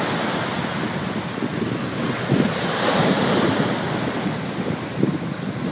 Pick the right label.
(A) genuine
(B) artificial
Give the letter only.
A